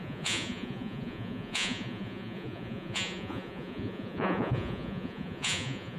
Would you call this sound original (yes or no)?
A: no